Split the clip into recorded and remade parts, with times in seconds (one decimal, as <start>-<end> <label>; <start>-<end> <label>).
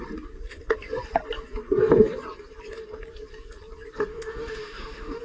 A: 0.0-4.1 recorded; 4.1-5.2 remade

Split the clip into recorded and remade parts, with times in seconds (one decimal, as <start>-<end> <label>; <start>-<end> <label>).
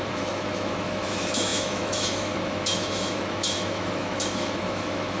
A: 0.0-5.2 remade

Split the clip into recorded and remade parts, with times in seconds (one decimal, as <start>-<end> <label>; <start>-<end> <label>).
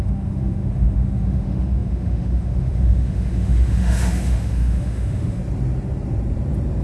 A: 0.0-5.4 remade; 5.4-6.8 recorded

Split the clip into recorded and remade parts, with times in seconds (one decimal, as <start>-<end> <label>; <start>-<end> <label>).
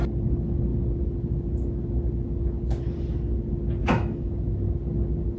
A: 0.0-3.8 recorded; 3.8-4.3 remade; 4.3-5.4 recorded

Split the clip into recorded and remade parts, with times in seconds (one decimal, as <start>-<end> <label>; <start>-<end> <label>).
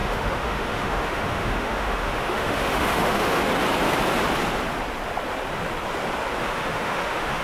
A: 0.0-3.5 remade; 3.5-6.4 recorded; 6.4-7.4 remade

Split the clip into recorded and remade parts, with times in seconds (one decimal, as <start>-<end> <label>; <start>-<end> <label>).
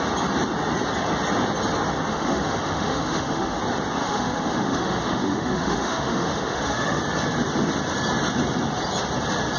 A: 0.0-2.1 recorded; 2.1-3.6 remade; 3.6-4.0 recorded; 4.0-7.0 remade; 7.0-9.6 recorded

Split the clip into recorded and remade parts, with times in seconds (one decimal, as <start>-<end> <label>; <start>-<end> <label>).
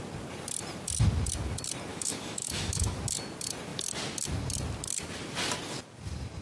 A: 0.0-1.9 recorded; 1.9-3.0 remade; 3.0-6.4 recorded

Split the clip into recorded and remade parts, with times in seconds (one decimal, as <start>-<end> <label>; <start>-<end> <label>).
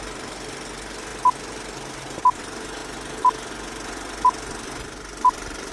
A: 0.0-5.7 recorded